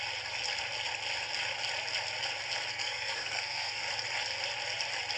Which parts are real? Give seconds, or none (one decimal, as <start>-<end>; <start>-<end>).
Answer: 0.0-2.7; 3.8-5.2